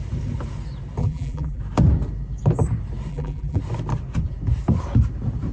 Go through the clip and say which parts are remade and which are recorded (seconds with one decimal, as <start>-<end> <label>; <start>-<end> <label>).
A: 0.0-1.0 recorded; 1.0-1.6 remade; 1.6-3.1 recorded; 3.1-3.6 remade; 3.6-5.5 recorded